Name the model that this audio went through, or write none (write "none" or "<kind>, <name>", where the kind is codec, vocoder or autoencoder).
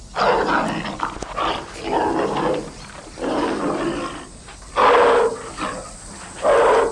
none